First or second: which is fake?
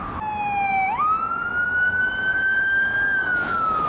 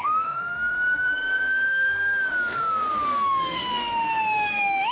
second